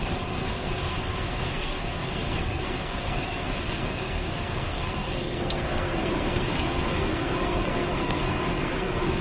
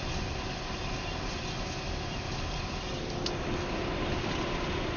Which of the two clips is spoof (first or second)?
first